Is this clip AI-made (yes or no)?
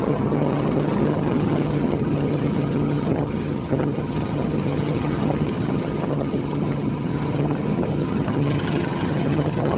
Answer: yes